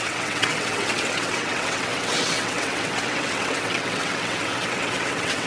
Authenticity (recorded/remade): remade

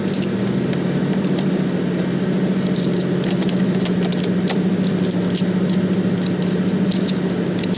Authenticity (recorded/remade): recorded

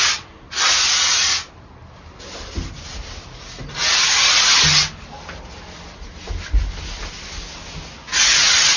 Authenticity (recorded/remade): recorded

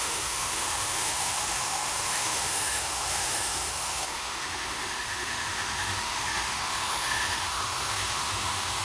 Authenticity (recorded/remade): remade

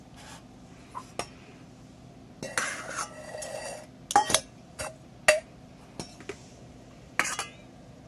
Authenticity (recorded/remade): recorded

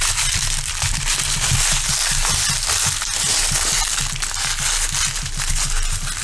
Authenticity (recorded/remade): recorded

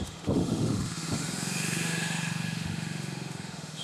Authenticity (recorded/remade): remade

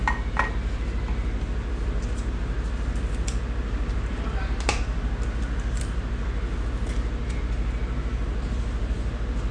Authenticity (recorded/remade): recorded